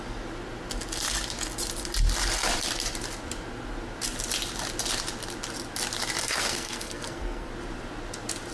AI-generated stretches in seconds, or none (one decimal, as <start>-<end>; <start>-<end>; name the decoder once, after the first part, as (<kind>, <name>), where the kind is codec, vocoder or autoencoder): 6.2-7.5 (codec, SNAC)